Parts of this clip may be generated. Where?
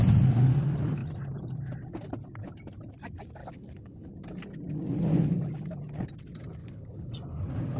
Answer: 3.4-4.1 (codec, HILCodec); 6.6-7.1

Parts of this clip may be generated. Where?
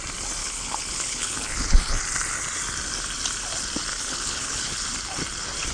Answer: 0.4-2.0 (codec, HILCodec); 3.9-4.8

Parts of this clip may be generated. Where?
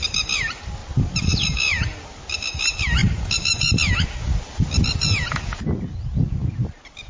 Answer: none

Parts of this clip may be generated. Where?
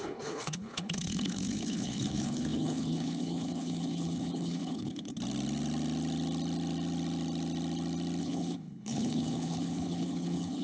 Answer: 0.0-5.1 (codec, HILCodec); 8.2-10.6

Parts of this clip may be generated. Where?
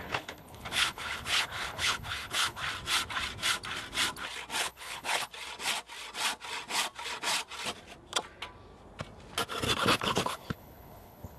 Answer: 0.0-2.6 (codec, HILCodec); 4.6-5.3; 9.8-11.4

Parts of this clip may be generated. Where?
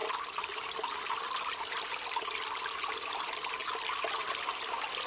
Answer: none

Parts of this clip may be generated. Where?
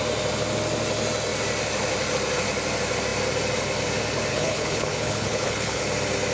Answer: 4.3-5.8 (codec, HILCodec)